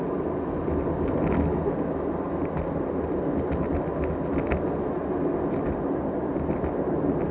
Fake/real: real